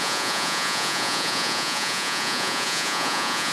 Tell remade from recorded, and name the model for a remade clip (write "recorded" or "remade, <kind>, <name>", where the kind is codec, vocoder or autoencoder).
remade, vocoder, Vocos